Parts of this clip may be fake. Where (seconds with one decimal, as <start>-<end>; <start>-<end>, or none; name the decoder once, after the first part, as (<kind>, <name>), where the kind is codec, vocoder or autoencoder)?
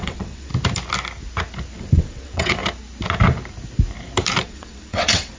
0.0-0.5 (vocoder, WaveNeXt); 1.8-2.6; 4.4-5.4